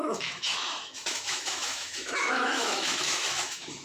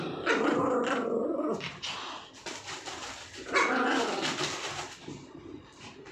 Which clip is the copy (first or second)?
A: first